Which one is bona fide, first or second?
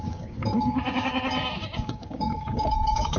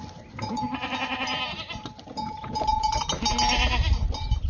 second